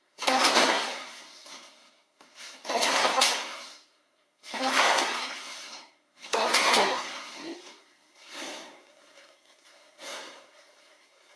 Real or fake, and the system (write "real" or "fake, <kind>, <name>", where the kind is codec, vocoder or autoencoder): fake, codec, SNAC